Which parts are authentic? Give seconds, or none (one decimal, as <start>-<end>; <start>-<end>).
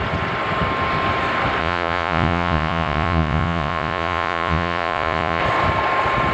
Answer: 0.0-1.6; 5.4-6.3